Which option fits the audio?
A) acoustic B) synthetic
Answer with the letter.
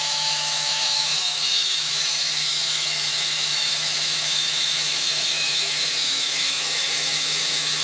B